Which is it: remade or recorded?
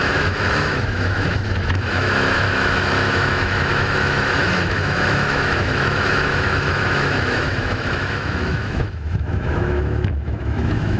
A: remade